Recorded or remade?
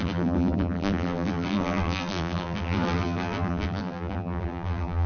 remade